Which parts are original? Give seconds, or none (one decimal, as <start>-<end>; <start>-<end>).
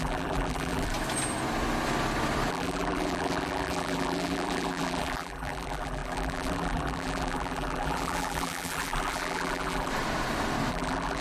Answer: 0.9-2.5; 9.9-10.7